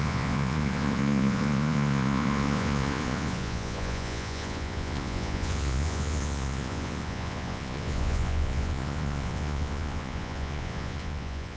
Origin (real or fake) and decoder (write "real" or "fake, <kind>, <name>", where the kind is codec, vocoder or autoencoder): fake, vocoder, Vocos